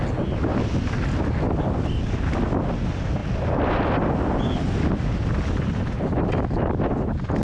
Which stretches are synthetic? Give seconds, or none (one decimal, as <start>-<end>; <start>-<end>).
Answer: none